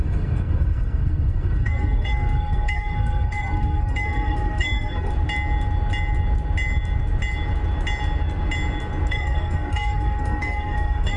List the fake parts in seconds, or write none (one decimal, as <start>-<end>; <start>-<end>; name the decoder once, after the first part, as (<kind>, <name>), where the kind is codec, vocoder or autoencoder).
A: 0.0-5.1 (codec, SNAC); 9.1-11.2

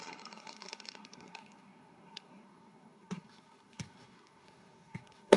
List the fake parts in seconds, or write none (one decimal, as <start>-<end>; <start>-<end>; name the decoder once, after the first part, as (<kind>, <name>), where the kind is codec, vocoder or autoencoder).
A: 0.0-5.4 (codec, SNAC)

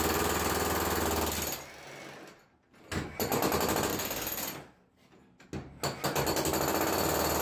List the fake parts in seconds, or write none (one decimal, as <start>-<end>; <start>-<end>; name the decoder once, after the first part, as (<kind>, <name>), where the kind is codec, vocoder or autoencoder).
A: none

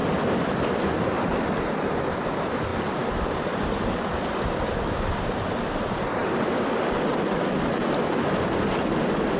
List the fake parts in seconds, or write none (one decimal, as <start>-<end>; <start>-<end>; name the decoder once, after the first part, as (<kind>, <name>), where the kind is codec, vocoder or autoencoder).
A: 0.0-1.0 (vocoder, BigVGAN v2); 6.2-6.8

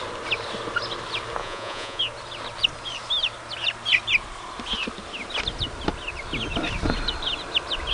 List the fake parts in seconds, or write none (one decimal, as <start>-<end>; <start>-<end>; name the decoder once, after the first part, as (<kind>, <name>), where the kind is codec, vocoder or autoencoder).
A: 1.4-2.0 (vocoder, Vocos)